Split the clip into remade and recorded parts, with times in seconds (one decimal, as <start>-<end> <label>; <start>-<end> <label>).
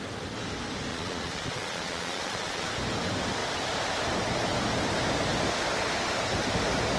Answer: 0.0-0.9 recorded; 0.9-2.7 remade; 2.7-7.0 recorded